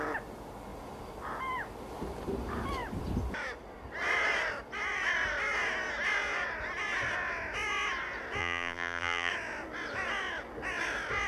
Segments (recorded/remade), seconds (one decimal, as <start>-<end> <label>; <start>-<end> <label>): 0.0-8.4 recorded; 8.4-9.3 remade; 9.3-11.3 recorded